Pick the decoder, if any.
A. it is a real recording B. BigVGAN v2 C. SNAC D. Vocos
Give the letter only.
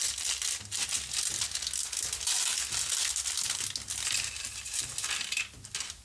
A